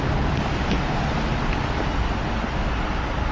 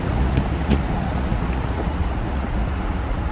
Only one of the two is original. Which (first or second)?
first